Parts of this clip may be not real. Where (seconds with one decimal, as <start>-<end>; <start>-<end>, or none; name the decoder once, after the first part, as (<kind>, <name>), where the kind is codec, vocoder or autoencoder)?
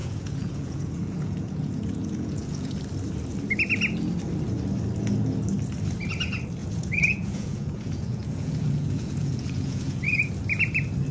0.0-2.8 (vocoder, Vocos); 6.6-10.3